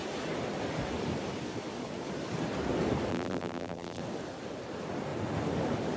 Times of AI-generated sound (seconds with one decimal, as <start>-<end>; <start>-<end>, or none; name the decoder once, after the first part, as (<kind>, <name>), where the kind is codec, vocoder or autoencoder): 3.1-4.0 (vocoder, BigVGAN v2)